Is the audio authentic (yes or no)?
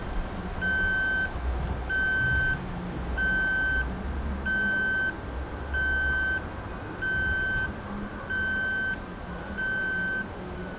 yes